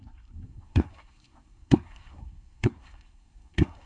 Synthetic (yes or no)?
yes